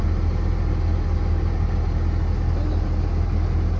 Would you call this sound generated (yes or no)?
no